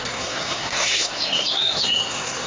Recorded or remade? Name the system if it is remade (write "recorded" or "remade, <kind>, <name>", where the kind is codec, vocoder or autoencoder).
remade, codec, SNAC